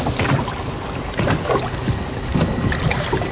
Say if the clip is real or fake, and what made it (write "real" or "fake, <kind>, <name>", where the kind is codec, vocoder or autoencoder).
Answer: real